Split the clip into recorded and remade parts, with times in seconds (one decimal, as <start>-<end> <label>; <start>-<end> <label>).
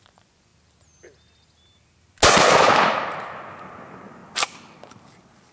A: 0.0-0.5 remade; 0.5-3.8 recorded; 3.8-4.2 remade; 4.2-5.5 recorded